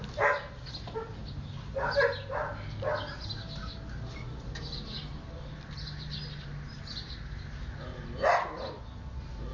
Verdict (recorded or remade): recorded